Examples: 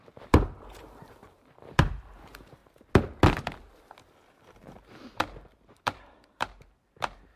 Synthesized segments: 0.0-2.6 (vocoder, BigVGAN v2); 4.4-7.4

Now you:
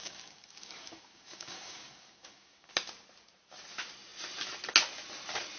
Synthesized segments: 0.0-2.7 (codec, DAC)

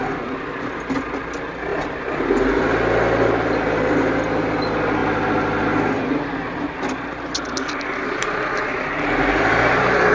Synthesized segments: none

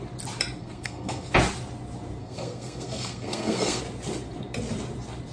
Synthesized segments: 0.6-1.3 (codec, SNAC); 2.2-3.8